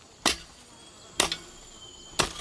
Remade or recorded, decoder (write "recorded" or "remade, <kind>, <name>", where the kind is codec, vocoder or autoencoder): recorded